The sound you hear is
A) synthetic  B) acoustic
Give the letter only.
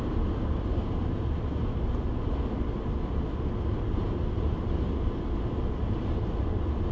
B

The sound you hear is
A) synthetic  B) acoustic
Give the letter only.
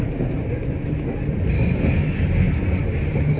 B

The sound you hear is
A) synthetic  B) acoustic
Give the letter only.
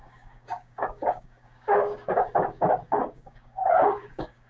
A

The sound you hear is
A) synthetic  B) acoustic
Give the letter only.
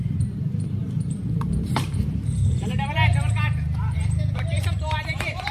A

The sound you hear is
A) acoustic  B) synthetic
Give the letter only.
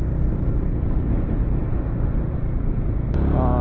A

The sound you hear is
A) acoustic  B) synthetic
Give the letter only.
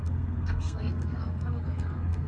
B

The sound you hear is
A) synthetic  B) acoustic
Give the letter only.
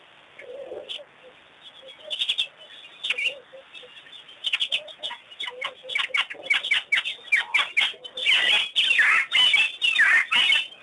B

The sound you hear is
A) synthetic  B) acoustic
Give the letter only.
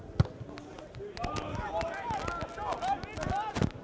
B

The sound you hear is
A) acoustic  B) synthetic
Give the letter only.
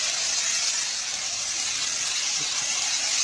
A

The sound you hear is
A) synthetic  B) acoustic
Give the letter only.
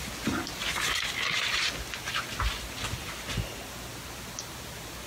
B